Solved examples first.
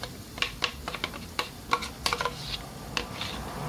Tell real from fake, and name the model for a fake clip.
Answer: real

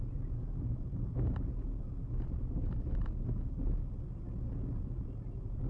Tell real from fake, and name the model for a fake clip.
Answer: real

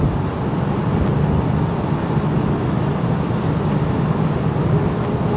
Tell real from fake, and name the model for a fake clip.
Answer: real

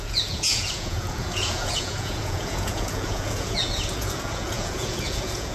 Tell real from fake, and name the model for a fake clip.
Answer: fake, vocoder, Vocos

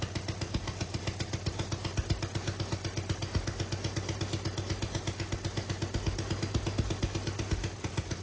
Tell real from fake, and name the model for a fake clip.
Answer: real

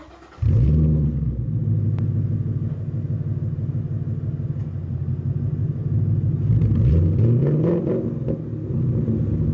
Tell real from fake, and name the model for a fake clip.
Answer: real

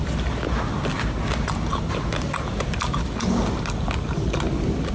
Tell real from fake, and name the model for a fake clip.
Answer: real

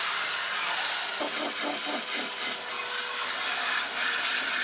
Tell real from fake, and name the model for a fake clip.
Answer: real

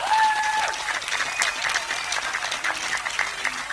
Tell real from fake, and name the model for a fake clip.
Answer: real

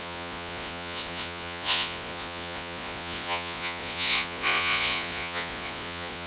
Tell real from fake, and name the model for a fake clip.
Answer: fake, vocoder, Vocos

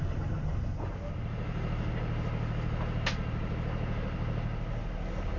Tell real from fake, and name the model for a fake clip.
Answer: real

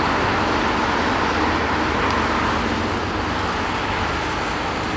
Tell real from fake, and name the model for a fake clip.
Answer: real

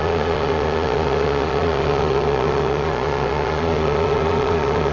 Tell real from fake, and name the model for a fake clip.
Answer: fake, vocoder, Vocos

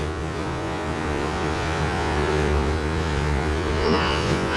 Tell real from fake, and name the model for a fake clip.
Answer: fake, vocoder, Vocos